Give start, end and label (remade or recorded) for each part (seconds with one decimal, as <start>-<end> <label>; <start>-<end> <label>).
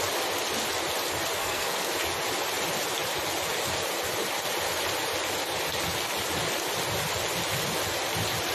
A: 0.0-1.4 recorded; 1.4-1.9 remade; 1.9-8.5 recorded